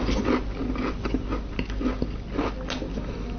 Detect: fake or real real